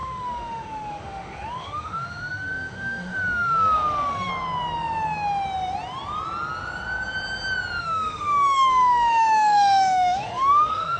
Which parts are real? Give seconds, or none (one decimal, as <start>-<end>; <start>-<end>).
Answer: 4.3-7.8